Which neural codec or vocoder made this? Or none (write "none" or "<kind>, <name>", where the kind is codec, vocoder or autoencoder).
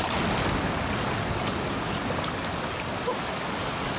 none